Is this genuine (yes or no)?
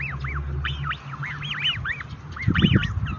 yes